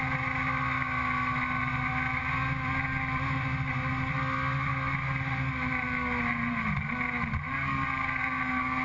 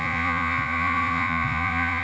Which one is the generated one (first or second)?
second